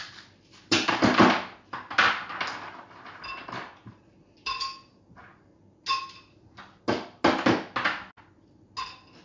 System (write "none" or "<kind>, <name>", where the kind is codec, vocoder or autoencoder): none